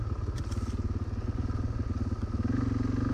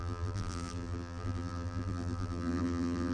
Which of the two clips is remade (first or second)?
second